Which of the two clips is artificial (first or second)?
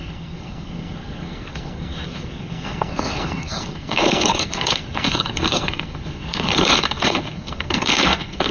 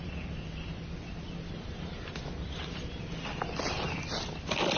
first